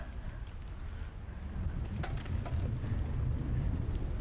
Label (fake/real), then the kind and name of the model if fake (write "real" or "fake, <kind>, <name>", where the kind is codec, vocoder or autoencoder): real